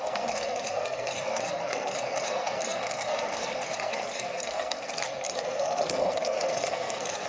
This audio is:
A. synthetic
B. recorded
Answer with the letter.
A